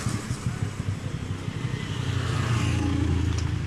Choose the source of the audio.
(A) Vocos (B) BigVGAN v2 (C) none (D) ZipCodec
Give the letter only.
C